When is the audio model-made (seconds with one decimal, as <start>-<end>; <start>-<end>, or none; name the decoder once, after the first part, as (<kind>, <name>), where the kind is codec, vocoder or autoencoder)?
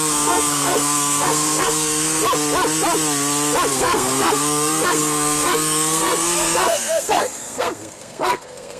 0.0-2.2 (codec, SNAC); 3.7-8.8